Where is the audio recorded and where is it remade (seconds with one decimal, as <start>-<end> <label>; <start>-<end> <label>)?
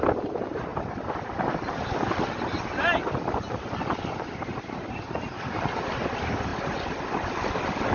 0.0-7.9 recorded